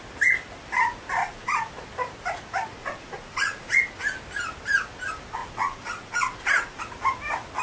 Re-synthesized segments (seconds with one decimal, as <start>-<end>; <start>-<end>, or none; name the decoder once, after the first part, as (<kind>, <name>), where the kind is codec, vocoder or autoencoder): 1.2-1.7 (vocoder, Vocos); 2.8-3.8; 5.4-6.8